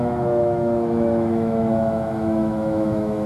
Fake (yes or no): yes